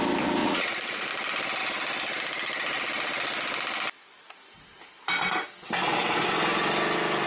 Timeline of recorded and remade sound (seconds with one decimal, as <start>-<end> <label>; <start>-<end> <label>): 0.0-0.4 recorded; 0.4-1.1 remade; 1.1-7.3 recorded